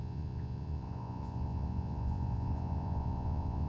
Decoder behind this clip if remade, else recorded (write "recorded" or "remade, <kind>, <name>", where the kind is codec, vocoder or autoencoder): remade, vocoder, Vocos